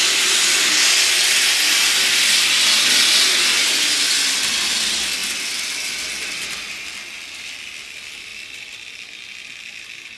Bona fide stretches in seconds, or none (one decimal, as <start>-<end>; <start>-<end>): 0.0-8.3; 8.9-10.2